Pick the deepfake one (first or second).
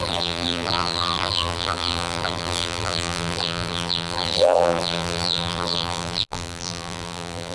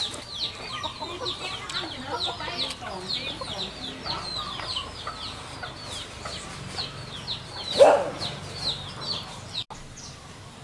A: first